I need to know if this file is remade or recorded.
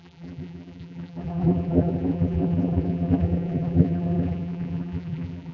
remade